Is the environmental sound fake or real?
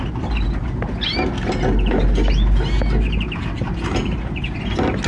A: real